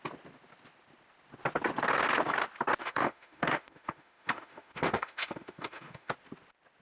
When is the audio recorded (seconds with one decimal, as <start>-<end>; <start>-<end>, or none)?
0.0-2.8; 6.1-6.8

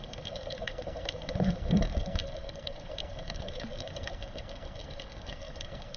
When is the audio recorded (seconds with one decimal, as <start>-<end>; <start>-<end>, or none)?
none

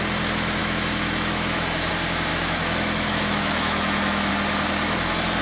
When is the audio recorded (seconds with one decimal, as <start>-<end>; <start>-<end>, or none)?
0.0-0.6; 1.9-2.3; 4.3-5.4

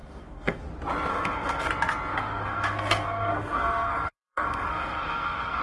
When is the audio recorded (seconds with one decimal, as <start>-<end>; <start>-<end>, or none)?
0.6-1.1; 1.7-2.1

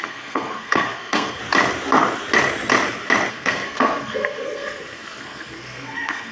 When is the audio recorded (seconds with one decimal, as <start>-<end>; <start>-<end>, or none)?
1.4-3.3

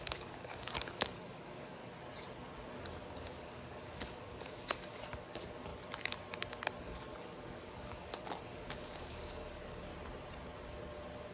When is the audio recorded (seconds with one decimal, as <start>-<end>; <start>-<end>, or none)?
1.8-2.8; 5.7-6.8; 9.9-11.3

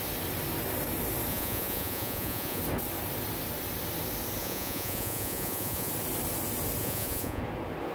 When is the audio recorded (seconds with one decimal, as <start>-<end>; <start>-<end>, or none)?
0.0-1.3; 2.6-4.4; 5.9-6.8; 7.4-7.9